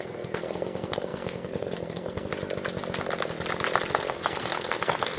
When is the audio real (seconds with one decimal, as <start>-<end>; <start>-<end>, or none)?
2.3-4.1